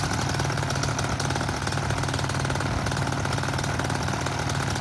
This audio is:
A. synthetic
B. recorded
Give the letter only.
B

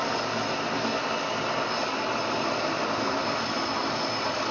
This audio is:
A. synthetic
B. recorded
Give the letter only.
B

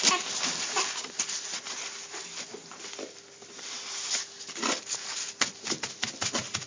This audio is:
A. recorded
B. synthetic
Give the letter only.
A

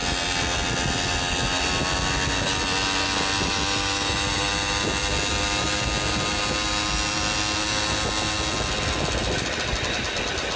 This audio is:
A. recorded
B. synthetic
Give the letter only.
A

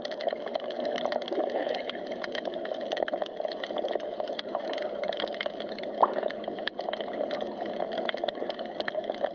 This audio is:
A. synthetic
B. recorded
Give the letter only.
A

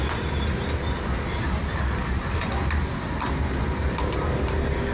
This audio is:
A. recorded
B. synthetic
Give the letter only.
A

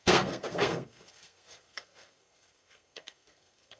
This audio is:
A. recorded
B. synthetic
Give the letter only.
B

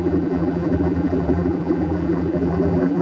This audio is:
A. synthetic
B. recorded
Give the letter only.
A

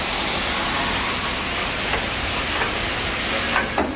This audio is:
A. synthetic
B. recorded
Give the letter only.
B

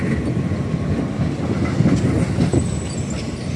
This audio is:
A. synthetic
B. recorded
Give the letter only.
B